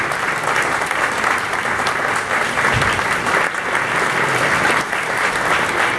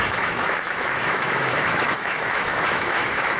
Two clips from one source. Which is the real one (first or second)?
first